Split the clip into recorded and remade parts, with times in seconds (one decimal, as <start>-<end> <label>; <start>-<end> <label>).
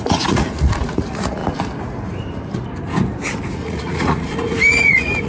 0.0-1.4 remade; 1.4-3.5 recorded; 3.5-5.3 remade